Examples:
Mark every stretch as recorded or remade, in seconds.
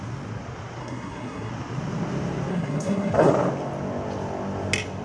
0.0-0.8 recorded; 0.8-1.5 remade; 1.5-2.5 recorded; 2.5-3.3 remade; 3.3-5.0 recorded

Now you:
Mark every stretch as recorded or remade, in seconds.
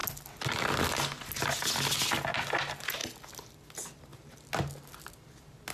0.0-5.7 recorded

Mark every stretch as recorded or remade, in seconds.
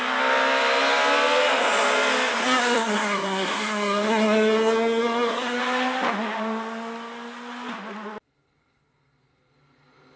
0.0-2.4 recorded; 2.4-5.6 remade; 5.6-10.2 recorded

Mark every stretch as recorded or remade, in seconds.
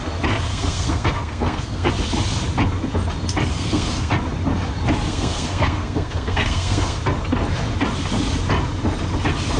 0.0-0.5 recorded; 0.5-1.9 remade; 1.9-3.5 recorded; 3.5-4.1 remade; 4.1-5.1 recorded; 5.1-7.0 remade; 7.0-9.6 recorded